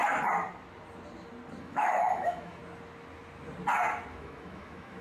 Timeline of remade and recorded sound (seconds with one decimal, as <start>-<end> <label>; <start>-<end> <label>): 0.0-1.6 recorded; 1.6-2.6 remade; 2.6-4.1 recorded; 4.1-5.0 remade